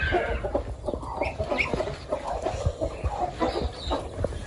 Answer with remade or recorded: recorded